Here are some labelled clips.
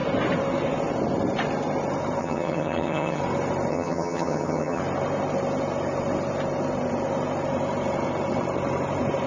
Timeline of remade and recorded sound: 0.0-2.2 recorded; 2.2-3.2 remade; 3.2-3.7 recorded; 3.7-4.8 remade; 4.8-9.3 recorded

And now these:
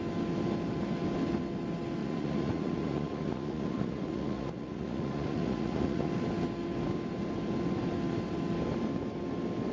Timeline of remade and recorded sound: 0.0-2.0 recorded; 2.0-6.1 remade; 6.1-9.7 recorded

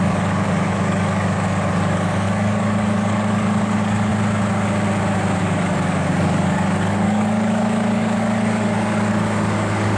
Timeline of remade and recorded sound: 0.0-4.1 remade; 4.1-5.4 recorded; 5.4-10.0 remade

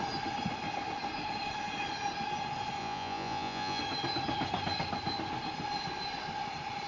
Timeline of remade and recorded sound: 0.0-2.8 recorded; 2.8-3.8 remade; 3.8-6.9 recorded

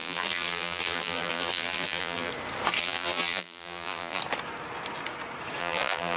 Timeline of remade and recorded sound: 0.0-2.3 remade; 2.3-2.8 recorded; 2.8-4.2 remade; 4.2-5.6 recorded; 5.6-6.2 remade

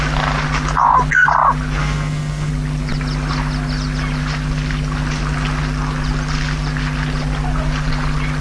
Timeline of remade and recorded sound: 0.0-1.8 recorded; 1.8-2.5 remade; 2.5-8.4 recorded

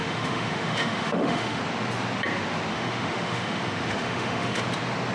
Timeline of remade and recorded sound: 0.0-1.6 remade; 1.6-2.7 recorded; 2.7-4.6 remade; 4.6-5.1 recorded